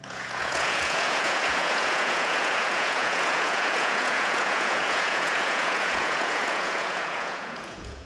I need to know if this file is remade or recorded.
remade